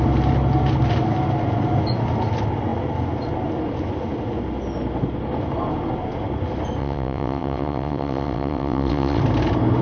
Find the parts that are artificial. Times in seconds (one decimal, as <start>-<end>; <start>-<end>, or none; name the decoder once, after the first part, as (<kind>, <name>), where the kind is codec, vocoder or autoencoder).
6.8-9.2 (vocoder, WaveNeXt)